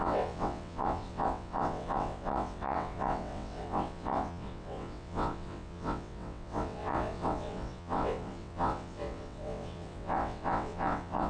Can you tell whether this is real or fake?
fake